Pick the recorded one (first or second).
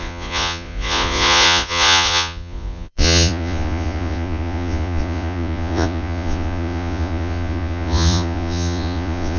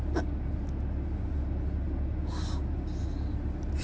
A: second